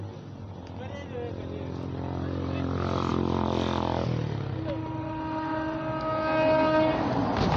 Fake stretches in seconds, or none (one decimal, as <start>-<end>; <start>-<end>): none